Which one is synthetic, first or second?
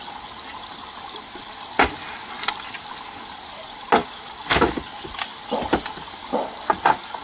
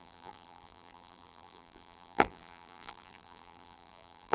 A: second